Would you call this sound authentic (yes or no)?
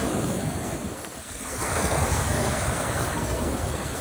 no